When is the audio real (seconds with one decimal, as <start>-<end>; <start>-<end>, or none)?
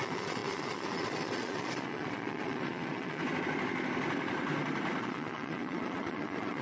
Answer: 3.2-5.0